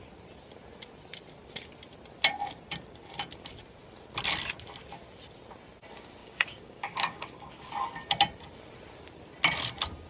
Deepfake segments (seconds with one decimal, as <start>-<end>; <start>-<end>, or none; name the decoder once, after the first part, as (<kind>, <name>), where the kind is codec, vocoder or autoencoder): 6.2-7.7 (codec, DAC)